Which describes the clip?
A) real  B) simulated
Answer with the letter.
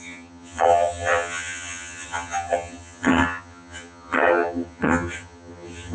B